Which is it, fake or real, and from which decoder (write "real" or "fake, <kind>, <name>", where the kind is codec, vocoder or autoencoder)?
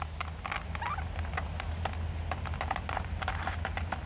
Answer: real